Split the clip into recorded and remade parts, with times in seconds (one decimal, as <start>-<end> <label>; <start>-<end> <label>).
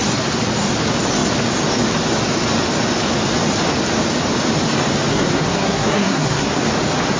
0.0-5.1 recorded; 5.1-6.6 remade; 6.6-7.2 recorded